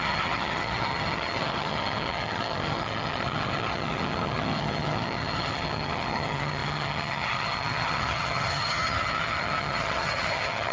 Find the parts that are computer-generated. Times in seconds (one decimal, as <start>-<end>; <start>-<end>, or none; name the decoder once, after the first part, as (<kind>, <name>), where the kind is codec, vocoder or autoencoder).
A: 0.0-10.7 (vocoder, HiFi-GAN)